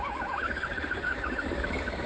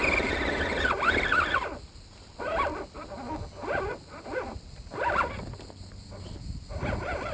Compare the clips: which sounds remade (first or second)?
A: first